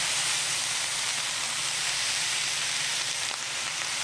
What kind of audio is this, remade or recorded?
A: remade